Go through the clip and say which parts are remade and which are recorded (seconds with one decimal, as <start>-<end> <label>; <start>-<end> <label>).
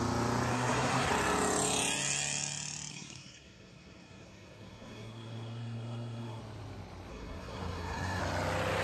0.0-0.5 recorded; 0.5-1.1 remade; 1.1-2.9 recorded; 2.9-6.4 remade; 6.4-7.1 recorded; 7.1-8.2 remade; 8.2-8.8 recorded